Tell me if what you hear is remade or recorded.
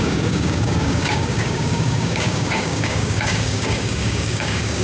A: remade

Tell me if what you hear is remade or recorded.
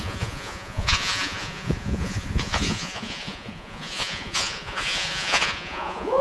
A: remade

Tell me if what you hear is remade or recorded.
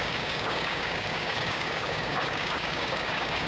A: remade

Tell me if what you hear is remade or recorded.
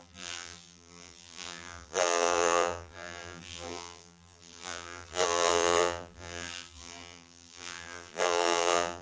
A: remade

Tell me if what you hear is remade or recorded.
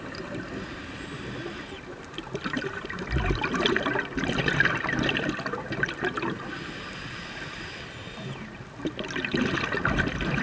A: recorded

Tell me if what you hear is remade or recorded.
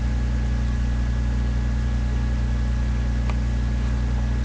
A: recorded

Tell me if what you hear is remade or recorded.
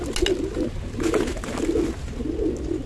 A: recorded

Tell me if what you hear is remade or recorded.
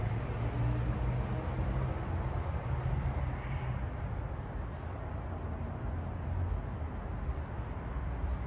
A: recorded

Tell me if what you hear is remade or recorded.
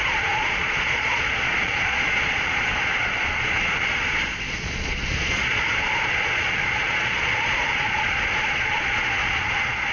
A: remade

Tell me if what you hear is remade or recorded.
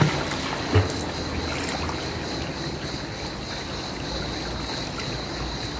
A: recorded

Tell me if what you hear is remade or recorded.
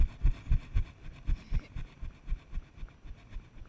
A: recorded